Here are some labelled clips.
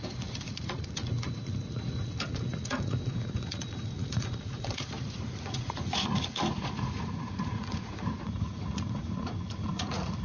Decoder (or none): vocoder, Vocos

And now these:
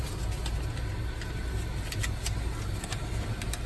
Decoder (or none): none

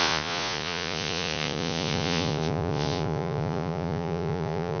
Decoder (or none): vocoder, Vocos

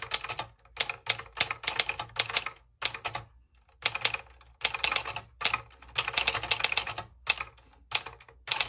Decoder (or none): none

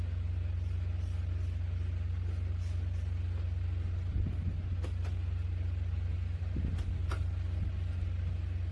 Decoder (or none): none